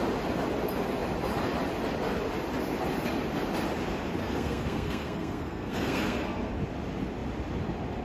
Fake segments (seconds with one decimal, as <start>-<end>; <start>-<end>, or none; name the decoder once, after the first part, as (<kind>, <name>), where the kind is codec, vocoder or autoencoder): 4.2-6.5 (codec, SNAC)